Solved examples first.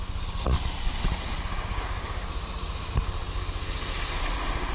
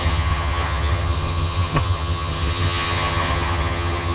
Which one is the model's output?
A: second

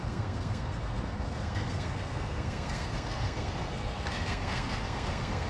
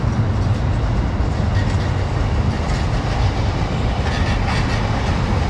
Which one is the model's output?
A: first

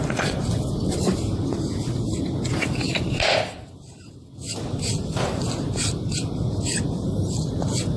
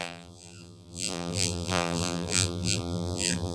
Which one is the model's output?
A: second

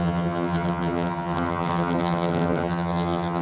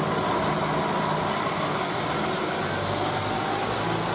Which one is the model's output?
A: first